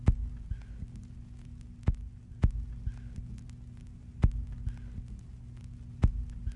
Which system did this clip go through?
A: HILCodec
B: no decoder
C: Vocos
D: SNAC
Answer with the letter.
B